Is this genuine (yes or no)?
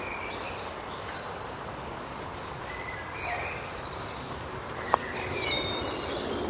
yes